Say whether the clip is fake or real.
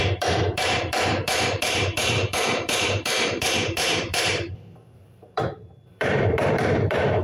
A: fake